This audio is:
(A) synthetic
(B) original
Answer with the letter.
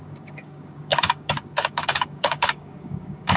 A